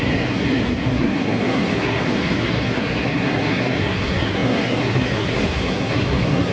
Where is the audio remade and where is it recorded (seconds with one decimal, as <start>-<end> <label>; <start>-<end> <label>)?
0.0-6.5 remade